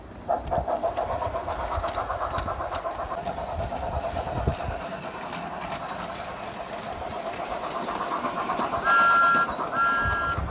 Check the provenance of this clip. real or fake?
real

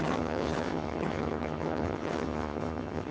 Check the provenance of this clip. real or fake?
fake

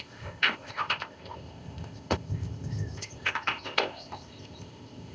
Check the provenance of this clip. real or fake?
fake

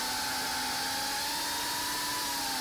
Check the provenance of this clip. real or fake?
real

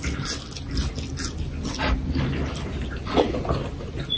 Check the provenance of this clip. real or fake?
real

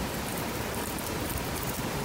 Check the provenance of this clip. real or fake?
fake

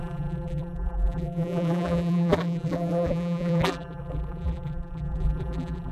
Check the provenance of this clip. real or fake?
fake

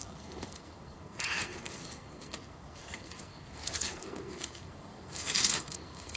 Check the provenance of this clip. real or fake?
fake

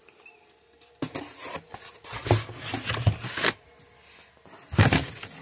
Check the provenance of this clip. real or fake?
real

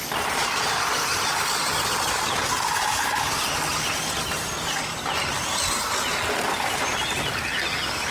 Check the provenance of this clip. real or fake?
real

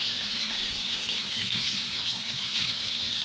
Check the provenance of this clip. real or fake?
fake